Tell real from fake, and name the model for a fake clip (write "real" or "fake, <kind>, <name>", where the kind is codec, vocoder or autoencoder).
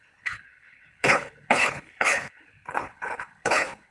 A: fake, codec, HILCodec